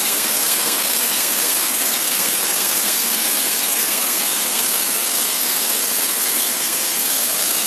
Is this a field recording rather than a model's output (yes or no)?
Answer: no